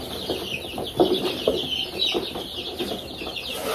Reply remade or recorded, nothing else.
recorded